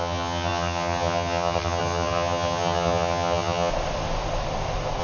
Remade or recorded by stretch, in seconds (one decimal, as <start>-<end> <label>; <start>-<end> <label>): 0.0-3.7 remade; 3.7-5.0 recorded